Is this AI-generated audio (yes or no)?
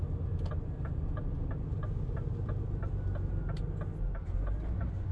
no